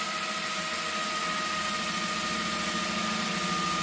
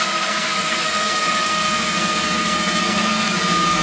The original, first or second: first